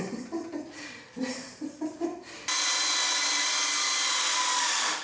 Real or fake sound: real